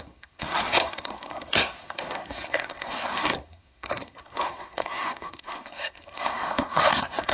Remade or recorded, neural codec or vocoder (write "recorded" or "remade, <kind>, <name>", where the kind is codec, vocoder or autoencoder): remade, codec, SNAC